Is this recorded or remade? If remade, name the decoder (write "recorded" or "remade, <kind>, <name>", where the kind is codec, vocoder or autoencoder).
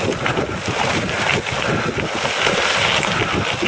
recorded